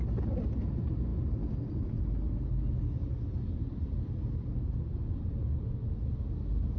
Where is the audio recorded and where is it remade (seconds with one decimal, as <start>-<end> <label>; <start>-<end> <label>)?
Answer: 0.0-6.8 recorded